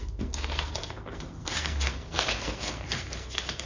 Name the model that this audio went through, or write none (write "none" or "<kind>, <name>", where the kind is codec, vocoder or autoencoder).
codec, SNAC